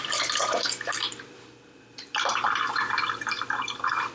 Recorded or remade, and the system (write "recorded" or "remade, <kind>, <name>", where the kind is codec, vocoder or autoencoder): remade, vocoder, BigVGAN v2